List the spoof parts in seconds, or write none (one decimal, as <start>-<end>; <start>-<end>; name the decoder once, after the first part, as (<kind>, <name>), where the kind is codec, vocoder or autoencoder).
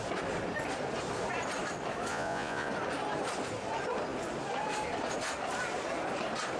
2.1-2.7 (vocoder, Vocos)